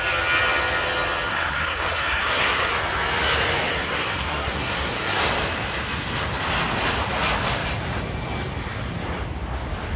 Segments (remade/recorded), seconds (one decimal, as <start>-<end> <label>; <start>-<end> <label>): 0.0-1.3 recorded; 1.3-2.7 remade; 2.7-3.7 recorded; 3.7-5.2 remade; 5.2-10.0 recorded